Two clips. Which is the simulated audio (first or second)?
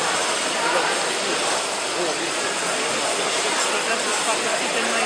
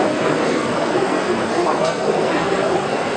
second